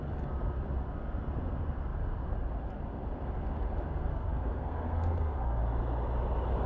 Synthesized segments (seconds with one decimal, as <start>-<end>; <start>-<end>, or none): 4.1-5.6